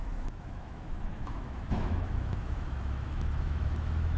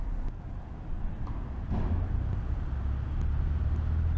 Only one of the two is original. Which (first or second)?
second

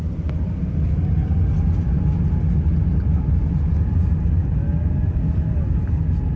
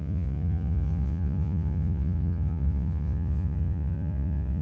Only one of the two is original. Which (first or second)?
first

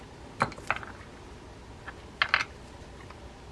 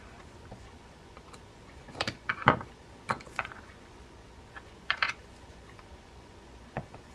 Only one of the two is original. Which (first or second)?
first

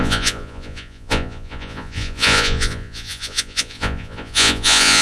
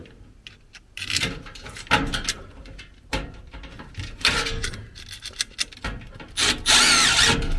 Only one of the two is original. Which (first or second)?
second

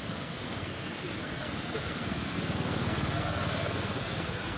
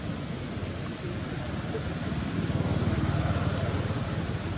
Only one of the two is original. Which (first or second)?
second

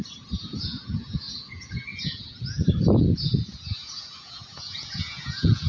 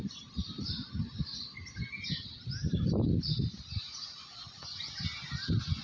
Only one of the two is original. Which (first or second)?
second